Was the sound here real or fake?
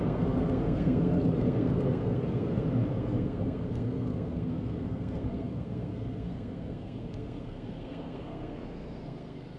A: fake